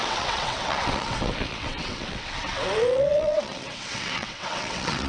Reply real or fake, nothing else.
fake